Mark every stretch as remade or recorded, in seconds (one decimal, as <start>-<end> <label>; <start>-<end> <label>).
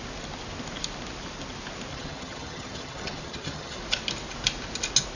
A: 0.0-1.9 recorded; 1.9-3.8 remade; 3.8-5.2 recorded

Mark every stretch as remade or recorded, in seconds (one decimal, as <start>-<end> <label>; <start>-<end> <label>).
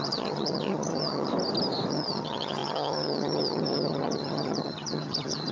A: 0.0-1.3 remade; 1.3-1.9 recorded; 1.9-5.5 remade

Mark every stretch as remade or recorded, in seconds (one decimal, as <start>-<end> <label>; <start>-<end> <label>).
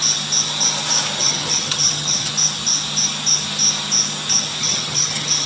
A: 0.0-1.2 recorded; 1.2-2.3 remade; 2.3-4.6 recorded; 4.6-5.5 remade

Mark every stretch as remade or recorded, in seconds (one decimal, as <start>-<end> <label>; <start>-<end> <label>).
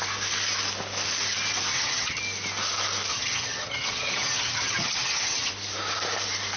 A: 0.0-1.7 recorded; 1.7-2.2 remade; 2.2-3.1 recorded; 3.1-5.5 remade; 5.5-6.6 recorded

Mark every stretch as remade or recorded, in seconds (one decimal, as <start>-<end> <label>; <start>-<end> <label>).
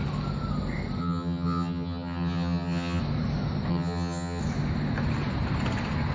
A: 0.0-1.0 recorded; 1.0-3.0 remade; 3.0-3.7 recorded; 3.7-4.4 remade; 4.4-6.1 recorded